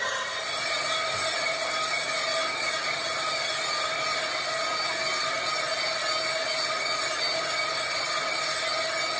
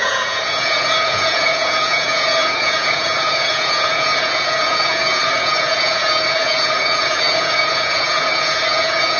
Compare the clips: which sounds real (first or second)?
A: first